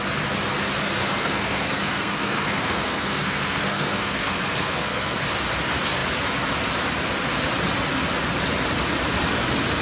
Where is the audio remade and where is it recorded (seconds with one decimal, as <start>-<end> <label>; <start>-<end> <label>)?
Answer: 0.0-1.0 recorded; 1.0-5.2 remade; 5.2-9.8 recorded